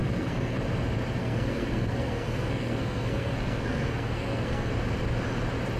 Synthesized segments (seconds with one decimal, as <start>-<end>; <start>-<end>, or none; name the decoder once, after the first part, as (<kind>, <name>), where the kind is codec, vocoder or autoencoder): 0.0-0.6 (codec, SNAC); 1.2-4.7

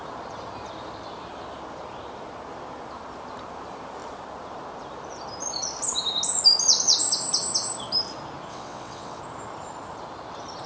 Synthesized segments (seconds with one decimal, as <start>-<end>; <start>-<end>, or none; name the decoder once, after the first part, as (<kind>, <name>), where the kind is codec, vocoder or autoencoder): 8.5-9.2 (vocoder, WaveNeXt)

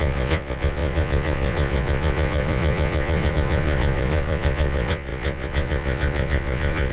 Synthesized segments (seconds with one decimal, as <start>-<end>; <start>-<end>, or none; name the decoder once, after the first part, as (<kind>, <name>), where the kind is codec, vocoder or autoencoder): 0.0-6.9 (vocoder, Vocos)

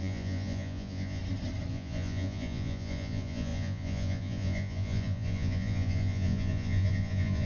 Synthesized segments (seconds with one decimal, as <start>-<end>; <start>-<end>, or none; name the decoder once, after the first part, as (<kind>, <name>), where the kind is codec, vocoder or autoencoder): 0.0-1.2 (vocoder, Vocos); 1.7-7.5